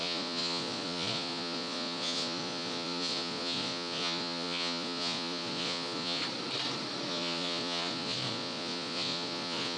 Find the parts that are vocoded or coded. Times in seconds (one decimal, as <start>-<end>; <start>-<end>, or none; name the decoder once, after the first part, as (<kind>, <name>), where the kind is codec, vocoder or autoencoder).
0.0-6.2 (vocoder, Vocos); 7.1-9.8